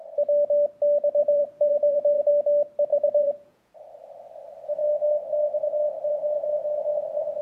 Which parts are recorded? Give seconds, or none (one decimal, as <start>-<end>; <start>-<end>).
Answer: 0.0-1.2; 2.3-2.9; 3.7-7.4